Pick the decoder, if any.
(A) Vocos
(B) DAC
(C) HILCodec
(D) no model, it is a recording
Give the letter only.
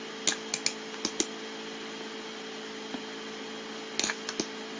D